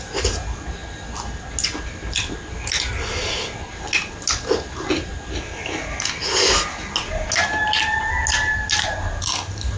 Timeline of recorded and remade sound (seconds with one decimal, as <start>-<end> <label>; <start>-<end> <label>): 0.0-9.8 recorded